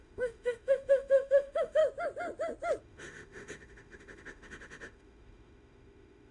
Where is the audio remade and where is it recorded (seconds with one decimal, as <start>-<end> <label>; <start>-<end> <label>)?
0.0-1.8 remade; 1.8-2.8 recorded; 2.8-6.3 remade